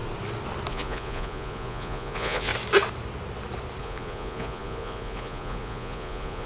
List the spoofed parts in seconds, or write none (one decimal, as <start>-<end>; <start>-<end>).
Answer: 0.7-2.5; 3.8-6.5